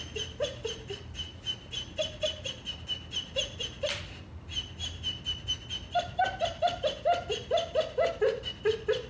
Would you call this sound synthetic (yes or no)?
no